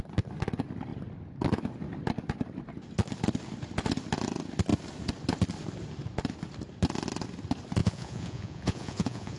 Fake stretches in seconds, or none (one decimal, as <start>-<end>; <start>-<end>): 7.8-9.4